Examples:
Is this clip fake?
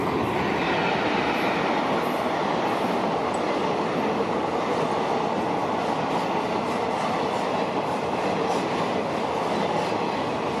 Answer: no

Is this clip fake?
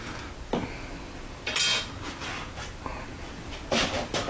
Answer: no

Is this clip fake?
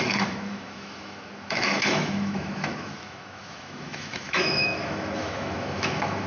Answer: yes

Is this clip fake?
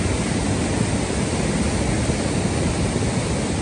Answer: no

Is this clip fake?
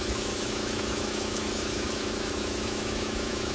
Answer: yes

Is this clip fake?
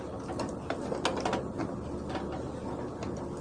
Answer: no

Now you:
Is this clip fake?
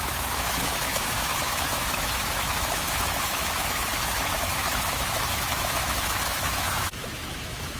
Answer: yes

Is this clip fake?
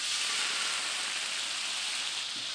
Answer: no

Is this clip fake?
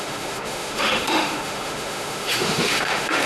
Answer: yes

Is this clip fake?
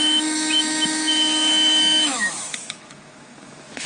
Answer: yes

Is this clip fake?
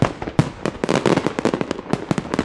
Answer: no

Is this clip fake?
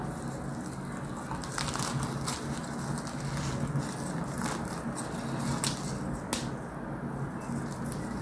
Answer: no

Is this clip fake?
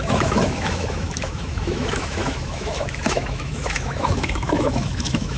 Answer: yes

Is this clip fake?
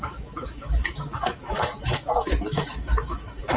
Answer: yes